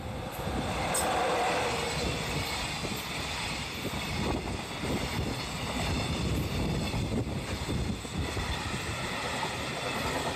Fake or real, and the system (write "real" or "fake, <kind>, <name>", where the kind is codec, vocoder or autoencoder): real